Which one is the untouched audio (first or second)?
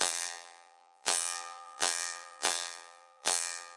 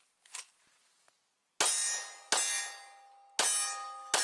second